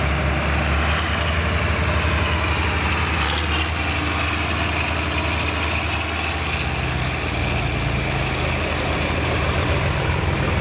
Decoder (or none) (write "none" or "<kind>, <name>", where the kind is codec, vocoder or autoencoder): none